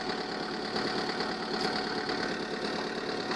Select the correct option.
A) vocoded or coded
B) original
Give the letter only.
B